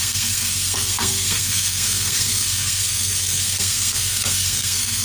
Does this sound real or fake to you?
fake